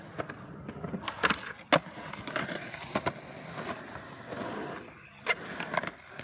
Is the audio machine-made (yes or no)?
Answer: no